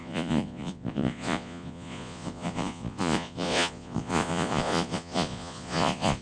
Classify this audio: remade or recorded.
remade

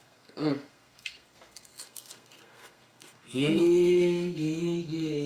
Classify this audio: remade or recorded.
remade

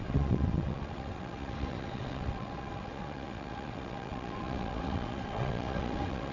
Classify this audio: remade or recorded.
remade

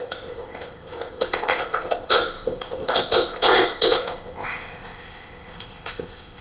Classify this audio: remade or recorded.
remade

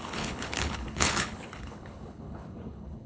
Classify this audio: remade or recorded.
remade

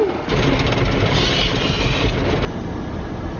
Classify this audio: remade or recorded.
recorded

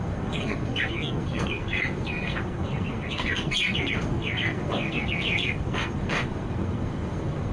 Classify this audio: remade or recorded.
remade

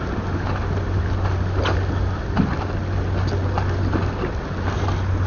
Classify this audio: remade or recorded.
recorded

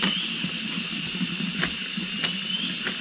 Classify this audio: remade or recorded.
recorded